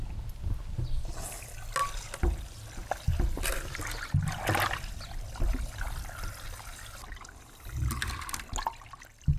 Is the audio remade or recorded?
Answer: recorded